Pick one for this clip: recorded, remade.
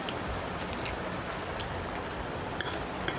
recorded